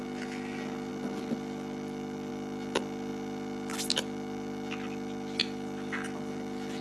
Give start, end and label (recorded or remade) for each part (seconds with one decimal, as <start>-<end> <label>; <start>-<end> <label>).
0.0-6.8 recorded